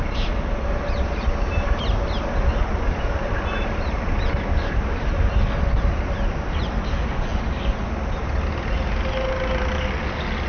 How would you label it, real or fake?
real